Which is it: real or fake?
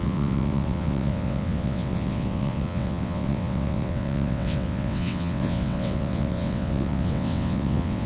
fake